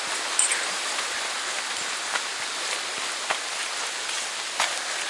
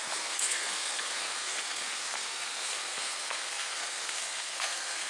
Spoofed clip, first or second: second